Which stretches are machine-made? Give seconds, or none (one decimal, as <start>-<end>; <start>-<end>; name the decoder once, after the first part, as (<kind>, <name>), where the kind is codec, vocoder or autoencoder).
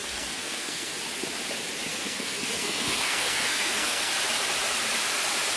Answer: 0.0-1.0 (codec, SNAC); 1.9-4.1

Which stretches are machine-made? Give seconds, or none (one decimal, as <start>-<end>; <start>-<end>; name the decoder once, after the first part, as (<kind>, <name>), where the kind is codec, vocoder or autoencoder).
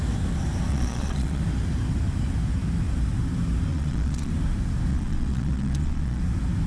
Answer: 0.7-1.4 (vocoder, Vocos); 3.7-4.3; 4.9-6.2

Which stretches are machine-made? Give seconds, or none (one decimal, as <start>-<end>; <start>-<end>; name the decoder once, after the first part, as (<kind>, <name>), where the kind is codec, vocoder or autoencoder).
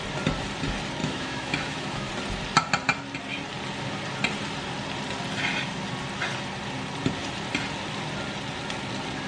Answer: 1.0-2.1 (autoencoder, DAC-VAE)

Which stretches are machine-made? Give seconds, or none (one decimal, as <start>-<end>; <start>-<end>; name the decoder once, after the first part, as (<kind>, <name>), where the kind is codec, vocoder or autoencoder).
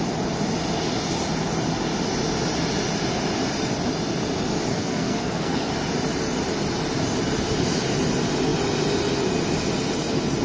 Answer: 4.7-5.7 (codec, SNAC)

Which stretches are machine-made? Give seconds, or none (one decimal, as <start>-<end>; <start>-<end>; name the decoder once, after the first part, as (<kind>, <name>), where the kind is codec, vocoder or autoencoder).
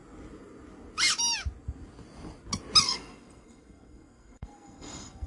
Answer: 2.8-5.3 (codec, SNAC)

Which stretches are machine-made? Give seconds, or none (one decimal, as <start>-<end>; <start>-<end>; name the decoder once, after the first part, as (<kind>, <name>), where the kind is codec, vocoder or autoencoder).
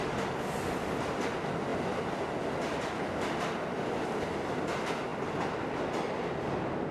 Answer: none